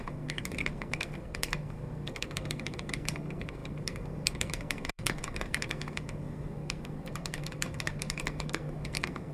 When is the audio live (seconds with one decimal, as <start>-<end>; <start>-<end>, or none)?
none